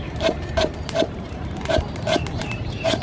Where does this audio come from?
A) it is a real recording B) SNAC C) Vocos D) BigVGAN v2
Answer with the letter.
D